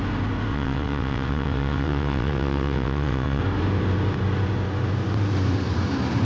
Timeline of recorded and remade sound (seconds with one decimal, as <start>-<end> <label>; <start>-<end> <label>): 0.0-0.5 recorded; 0.5-3.4 remade; 3.4-6.2 recorded